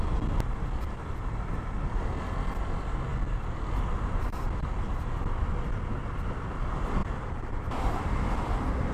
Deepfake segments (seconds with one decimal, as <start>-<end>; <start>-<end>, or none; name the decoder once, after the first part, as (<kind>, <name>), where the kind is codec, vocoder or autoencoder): 7.0-8.3 (vocoder, BigVGAN v2)